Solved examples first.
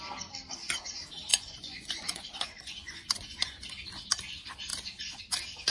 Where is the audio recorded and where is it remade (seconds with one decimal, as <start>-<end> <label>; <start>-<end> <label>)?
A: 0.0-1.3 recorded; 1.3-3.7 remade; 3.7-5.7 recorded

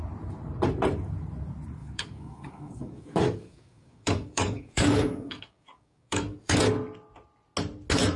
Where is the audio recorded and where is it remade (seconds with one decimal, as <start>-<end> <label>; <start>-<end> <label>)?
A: 0.0-1.8 recorded; 1.8-6.6 remade; 6.6-8.2 recorded

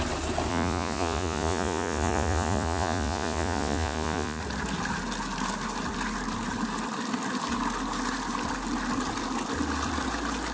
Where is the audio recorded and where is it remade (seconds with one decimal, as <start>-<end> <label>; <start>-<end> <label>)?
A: 0.0-0.5 recorded; 0.5-4.4 remade; 4.4-10.5 recorded

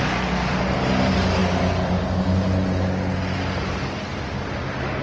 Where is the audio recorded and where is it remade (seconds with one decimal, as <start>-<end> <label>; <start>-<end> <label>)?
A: 0.0-5.0 recorded

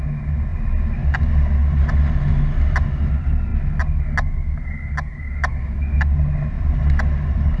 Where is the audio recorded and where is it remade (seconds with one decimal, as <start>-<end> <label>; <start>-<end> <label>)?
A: 0.0-7.6 recorded

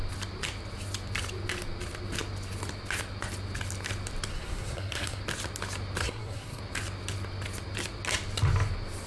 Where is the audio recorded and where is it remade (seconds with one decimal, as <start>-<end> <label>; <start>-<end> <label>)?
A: 0.0-4.3 recorded; 4.3-5.2 remade; 5.2-6.0 recorded; 6.0-6.6 remade; 6.6-9.1 recorded